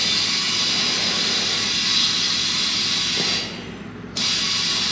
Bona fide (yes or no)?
yes